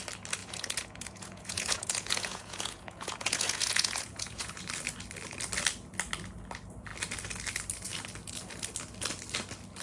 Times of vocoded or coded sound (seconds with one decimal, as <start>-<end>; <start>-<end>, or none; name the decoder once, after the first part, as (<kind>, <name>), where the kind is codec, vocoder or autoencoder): 0.4-4.6 (vocoder, Vocos)

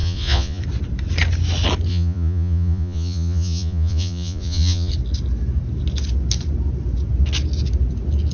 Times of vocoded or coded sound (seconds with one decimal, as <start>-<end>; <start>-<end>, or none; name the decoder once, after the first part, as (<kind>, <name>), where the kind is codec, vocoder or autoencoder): 0.0-0.6 (vocoder, Vocos); 1.9-4.9

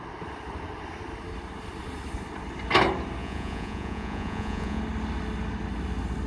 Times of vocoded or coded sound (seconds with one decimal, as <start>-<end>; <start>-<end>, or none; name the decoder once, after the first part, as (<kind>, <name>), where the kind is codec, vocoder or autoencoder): 3.2-4.8 (vocoder, Vocos)

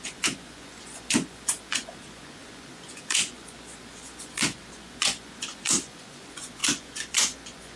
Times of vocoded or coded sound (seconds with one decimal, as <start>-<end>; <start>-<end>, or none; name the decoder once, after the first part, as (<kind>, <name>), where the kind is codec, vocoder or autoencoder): 0.0-7.8 (vocoder, Vocos)